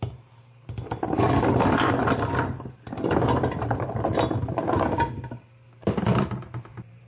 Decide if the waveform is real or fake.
real